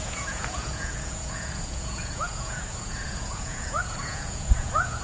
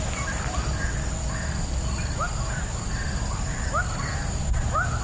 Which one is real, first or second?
second